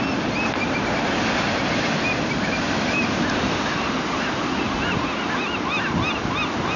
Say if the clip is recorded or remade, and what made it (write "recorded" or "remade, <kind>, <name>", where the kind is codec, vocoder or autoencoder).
recorded